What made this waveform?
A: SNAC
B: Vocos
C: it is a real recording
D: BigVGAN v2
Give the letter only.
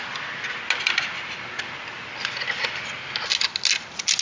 C